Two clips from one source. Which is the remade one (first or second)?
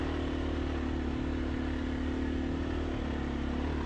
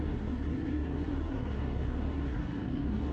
second